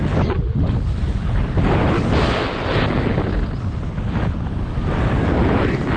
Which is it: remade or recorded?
recorded